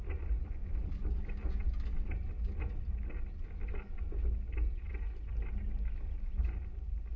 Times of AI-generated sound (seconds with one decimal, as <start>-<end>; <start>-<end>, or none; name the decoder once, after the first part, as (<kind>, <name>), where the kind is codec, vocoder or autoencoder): none